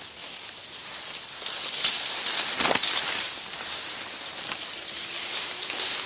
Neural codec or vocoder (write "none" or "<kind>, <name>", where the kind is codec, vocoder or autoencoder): none